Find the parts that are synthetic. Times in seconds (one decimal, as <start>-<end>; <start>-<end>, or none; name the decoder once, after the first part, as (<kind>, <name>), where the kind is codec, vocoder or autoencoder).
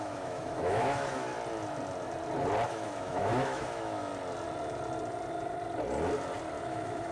0.0-1.3 (autoencoder, DAC-VAE); 2.7-4.1; 6.6-7.1